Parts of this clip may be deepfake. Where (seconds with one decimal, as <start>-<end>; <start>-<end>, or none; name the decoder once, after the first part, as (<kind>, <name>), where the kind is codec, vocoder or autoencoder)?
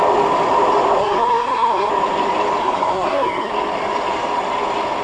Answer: 1.0-1.9 (codec, SNAC); 2.6-3.5